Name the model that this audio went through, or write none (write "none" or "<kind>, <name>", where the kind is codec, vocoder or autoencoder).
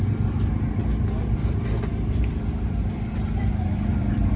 vocoder, BigVGAN v2